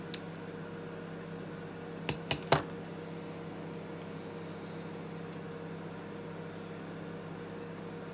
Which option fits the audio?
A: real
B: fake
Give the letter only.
A